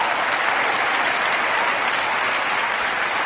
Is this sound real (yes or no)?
yes